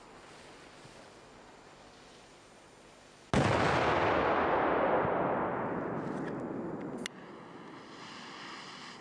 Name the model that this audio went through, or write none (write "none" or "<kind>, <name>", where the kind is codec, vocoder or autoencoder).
none